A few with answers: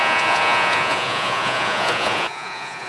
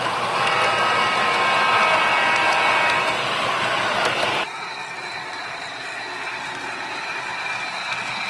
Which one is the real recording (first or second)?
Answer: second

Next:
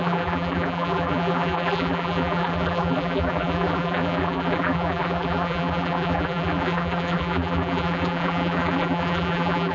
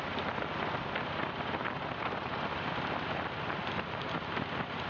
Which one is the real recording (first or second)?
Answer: second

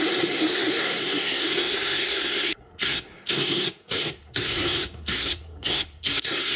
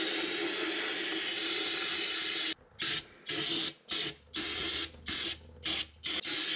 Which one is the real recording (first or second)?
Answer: second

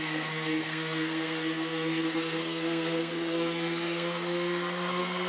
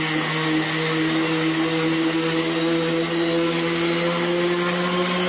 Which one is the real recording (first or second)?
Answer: second